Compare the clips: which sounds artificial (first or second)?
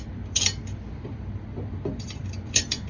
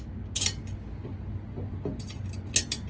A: first